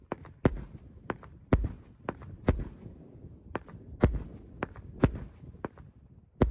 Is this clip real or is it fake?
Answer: real